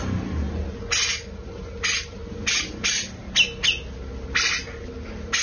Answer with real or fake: real